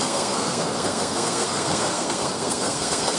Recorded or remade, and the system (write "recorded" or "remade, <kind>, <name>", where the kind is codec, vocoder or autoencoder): remade, codec, SNAC